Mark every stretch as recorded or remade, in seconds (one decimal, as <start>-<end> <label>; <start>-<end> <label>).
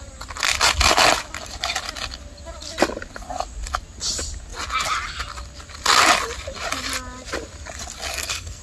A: 0.0-8.1 recorded; 8.1-8.6 remade